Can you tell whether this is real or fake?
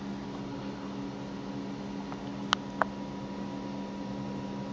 real